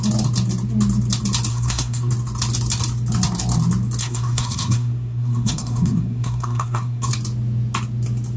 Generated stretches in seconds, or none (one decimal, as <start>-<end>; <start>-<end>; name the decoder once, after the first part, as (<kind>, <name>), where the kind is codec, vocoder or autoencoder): 1.5-2.1 (codec, SNAC); 4.0-7.1

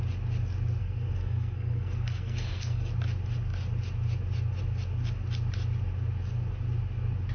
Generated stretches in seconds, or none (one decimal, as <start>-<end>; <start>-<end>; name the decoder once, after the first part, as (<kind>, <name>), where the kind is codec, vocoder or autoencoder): 0.8-2.9 (codec, SNAC)

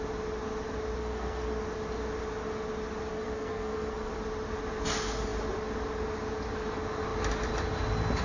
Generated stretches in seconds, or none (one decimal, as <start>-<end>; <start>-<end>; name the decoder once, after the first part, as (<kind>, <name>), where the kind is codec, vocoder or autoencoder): 1.0-1.6 (codec, SNAC); 3.1-4.1

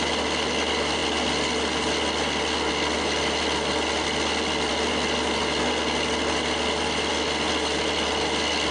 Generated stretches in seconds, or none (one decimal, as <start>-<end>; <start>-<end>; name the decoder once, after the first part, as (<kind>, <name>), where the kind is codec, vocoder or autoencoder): none

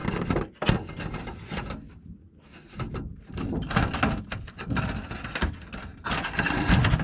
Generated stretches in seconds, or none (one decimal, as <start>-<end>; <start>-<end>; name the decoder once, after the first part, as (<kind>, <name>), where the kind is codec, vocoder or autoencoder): none